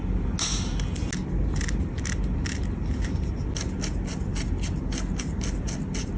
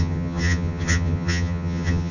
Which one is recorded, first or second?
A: first